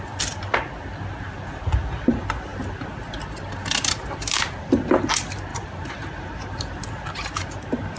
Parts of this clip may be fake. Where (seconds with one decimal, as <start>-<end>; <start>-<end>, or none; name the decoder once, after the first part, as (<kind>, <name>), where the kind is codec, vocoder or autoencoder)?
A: 5.5-6.9 (vocoder, BigVGAN v2)